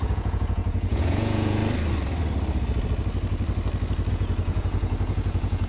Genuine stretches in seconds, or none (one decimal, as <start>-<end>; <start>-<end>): 1.6-4.1